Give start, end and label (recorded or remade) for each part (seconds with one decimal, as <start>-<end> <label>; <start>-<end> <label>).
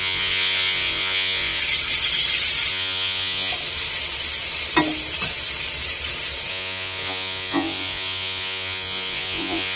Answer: 0.0-1.6 remade; 1.6-2.7 recorded; 2.7-3.5 remade; 3.5-6.5 recorded; 6.5-9.8 remade